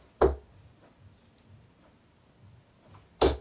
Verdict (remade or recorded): recorded